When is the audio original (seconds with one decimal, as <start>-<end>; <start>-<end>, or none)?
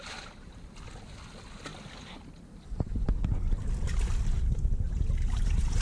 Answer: 0.0-5.8